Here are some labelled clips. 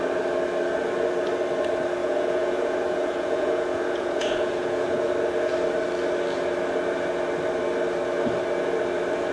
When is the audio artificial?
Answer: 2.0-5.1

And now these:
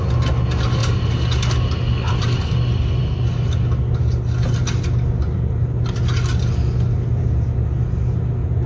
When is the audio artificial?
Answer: none

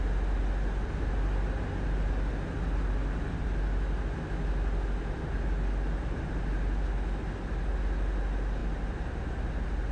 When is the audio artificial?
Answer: none

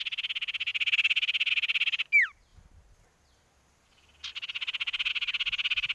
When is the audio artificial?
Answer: none

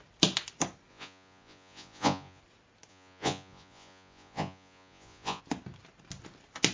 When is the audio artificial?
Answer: 0.9-2.4; 2.9-5.4

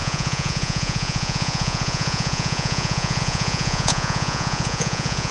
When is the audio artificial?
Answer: 0.0-5.3

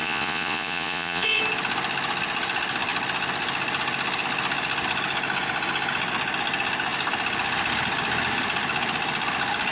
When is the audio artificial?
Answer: 0.0-1.4